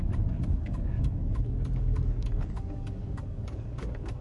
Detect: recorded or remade remade